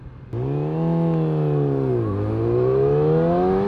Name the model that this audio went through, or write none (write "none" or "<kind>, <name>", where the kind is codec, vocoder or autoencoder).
none